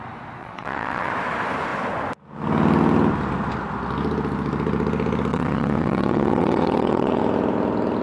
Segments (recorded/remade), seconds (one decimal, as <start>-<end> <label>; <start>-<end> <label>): 0.0-0.4 recorded; 0.4-1.1 remade; 1.1-5.3 recorded; 5.3-7.2 remade; 7.2-8.0 recorded